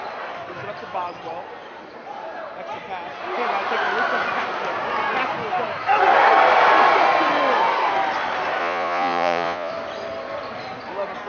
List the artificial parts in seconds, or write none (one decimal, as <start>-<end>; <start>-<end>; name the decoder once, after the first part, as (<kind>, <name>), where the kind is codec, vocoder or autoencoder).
8.6-9.7 (vocoder, Vocos)